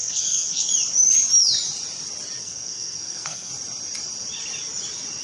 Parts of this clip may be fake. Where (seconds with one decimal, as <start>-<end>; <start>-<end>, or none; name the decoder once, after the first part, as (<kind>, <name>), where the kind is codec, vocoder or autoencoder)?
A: 0.0-0.7 (codec, SNAC); 2.4-3.5